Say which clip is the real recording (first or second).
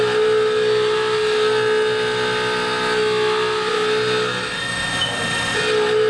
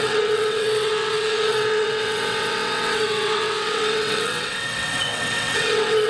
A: first